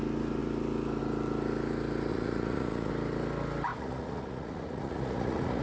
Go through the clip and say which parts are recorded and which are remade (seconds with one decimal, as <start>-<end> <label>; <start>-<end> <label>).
0.0-2.1 recorded; 2.1-2.9 remade; 2.9-3.7 recorded; 3.7-5.6 remade